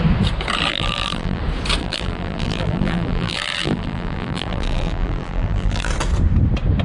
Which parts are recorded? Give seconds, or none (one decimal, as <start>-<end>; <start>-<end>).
0.0-0.7; 1.4-1.8; 5.9-6.8